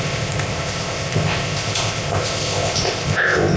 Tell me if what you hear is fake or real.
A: fake